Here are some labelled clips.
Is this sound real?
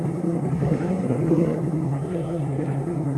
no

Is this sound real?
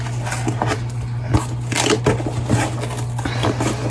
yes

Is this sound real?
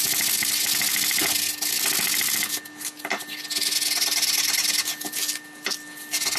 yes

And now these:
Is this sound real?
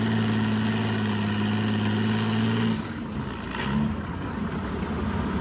yes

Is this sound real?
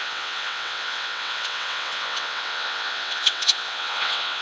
no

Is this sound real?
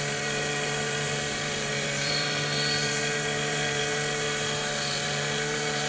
no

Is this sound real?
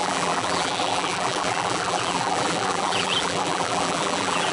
no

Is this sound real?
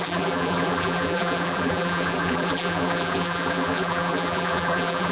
no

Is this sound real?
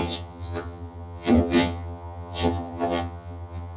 no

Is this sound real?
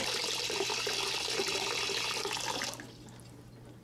yes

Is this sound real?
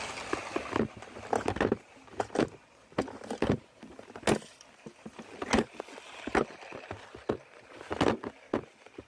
yes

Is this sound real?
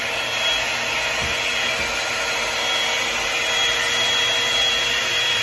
yes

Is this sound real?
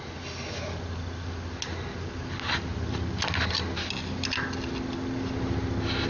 yes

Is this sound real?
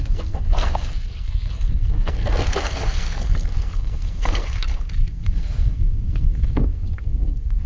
no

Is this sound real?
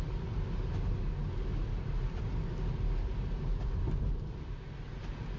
yes